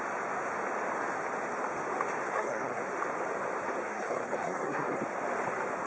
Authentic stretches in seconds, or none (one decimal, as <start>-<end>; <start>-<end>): 0.0-2.3; 2.8-3.9; 5.0-5.9